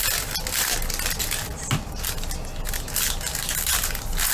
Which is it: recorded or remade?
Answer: recorded